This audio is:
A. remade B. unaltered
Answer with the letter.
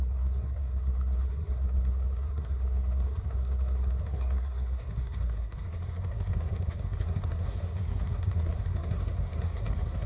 A